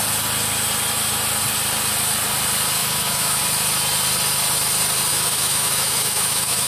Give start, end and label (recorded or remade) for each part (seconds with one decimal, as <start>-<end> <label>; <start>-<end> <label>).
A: 0.0-2.8 recorded; 2.8-3.4 remade; 3.4-5.1 recorded; 5.1-6.7 remade